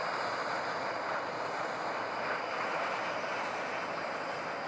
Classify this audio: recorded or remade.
recorded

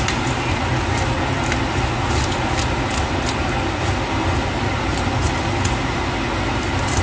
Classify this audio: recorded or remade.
recorded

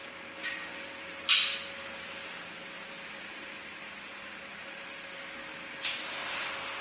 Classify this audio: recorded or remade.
recorded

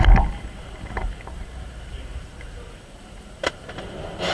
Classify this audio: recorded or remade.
remade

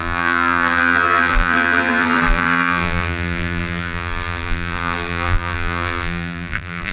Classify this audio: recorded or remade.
remade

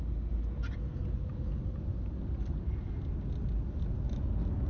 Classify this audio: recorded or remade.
recorded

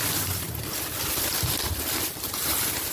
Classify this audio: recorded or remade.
recorded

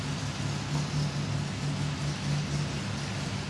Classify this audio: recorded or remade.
recorded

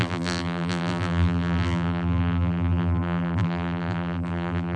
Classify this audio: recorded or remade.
remade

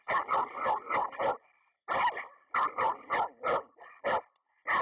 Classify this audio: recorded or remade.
recorded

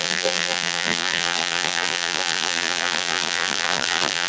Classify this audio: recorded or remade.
remade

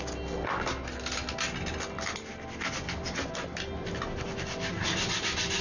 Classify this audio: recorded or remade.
recorded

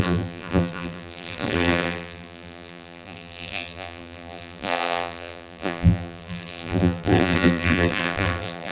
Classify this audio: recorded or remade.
remade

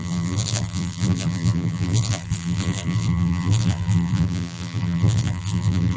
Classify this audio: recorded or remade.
remade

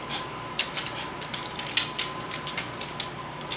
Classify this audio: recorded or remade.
recorded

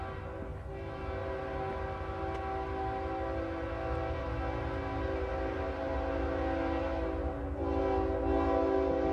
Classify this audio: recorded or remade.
recorded